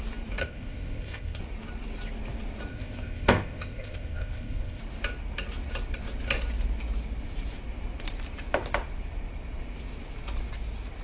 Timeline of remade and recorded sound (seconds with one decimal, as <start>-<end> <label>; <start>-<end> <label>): 0.0-0.4 recorded; 0.4-1.4 remade; 1.4-2.7 recorded; 2.7-4.8 remade; 4.8-11.0 recorded